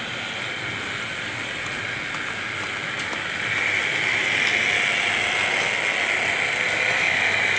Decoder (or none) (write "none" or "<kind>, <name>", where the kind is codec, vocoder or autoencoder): none